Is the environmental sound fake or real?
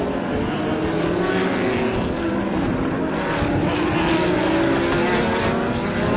real